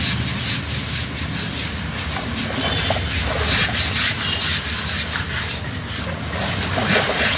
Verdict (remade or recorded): recorded